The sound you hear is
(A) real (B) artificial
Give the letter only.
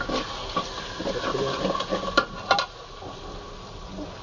A